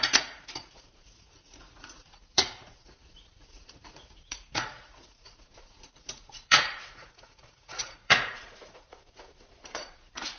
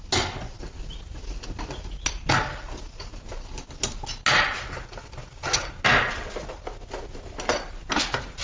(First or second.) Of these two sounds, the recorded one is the second